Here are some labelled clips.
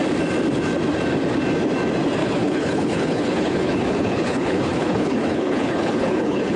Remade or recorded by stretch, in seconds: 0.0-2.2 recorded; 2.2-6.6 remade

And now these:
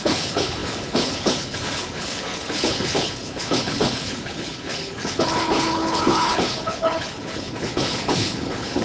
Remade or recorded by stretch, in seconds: 0.0-8.8 remade